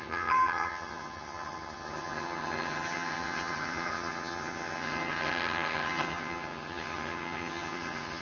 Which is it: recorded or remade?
remade